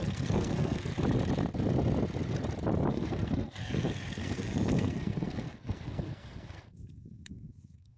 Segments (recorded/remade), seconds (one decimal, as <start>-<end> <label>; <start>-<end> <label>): 0.0-0.9 remade; 0.9-2.9 recorded; 2.9-8.0 remade

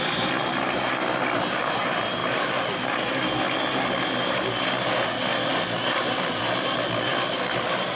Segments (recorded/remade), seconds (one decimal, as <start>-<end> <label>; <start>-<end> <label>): 0.0-5.3 recorded; 5.3-6.4 remade; 6.4-7.1 recorded; 7.1-8.0 remade

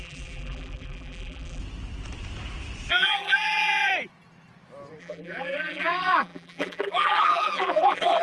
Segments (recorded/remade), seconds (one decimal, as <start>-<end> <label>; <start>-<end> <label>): 0.0-1.6 remade; 1.6-2.9 recorded; 2.9-3.9 remade; 3.9-5.0 recorded; 5.0-8.2 remade

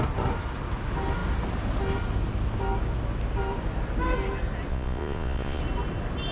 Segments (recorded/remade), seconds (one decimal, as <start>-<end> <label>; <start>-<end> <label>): 0.0-4.7 recorded; 4.7-5.6 remade; 5.6-6.3 recorded

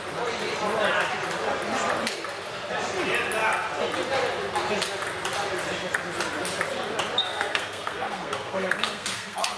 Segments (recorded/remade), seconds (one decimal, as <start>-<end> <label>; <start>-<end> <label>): 0.0-7.2 recorded; 7.2-9.6 remade